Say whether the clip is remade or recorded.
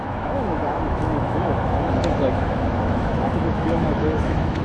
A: remade